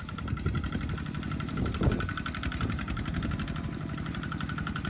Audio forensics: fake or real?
real